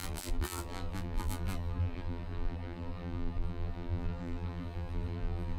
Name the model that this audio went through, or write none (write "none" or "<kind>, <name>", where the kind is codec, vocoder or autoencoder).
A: vocoder, BigVGAN v2